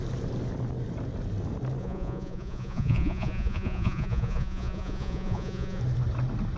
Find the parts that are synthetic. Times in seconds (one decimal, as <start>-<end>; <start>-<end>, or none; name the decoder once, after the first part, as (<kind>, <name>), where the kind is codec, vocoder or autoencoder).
1.8-5.8 (vocoder, Vocos)